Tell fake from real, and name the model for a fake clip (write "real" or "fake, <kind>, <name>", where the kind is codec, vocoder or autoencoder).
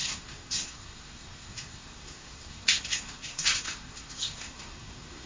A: fake, codec, SNAC